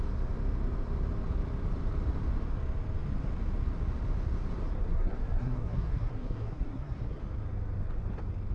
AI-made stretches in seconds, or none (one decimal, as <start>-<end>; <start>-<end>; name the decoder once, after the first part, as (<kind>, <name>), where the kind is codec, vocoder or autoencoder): 4.9-7.2 (codec, SNAC)